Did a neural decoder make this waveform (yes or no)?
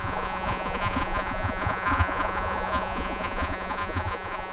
yes